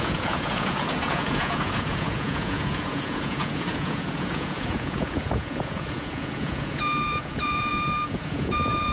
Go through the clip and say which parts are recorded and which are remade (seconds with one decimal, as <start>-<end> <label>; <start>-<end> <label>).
0.0-8.9 remade